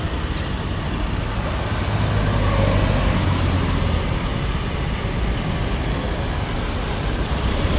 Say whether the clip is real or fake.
real